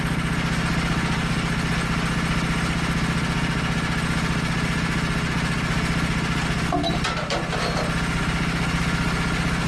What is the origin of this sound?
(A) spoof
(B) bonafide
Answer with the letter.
B